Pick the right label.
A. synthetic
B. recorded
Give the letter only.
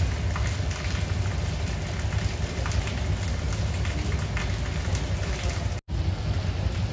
B